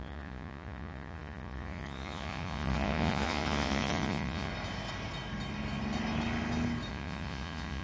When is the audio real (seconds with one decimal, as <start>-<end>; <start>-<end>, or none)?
4.5-6.9